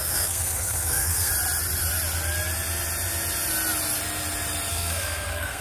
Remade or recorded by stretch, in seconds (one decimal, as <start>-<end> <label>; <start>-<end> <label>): 0.0-1.3 remade; 1.3-4.7 recorded; 4.7-5.6 remade